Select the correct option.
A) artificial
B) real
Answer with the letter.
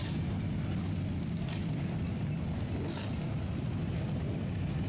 B